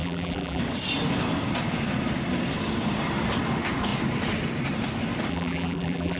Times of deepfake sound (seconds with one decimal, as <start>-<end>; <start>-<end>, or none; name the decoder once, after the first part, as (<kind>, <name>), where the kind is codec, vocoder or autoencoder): 0.0-0.6 (vocoder, BigVGAN v2); 5.3-6.2